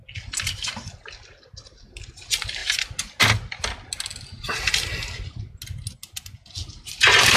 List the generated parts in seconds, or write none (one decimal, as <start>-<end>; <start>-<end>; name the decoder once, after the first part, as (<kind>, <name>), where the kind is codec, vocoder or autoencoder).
none